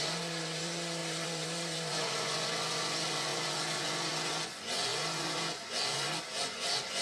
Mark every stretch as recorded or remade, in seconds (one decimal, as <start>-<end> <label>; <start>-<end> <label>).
0.0-7.0 remade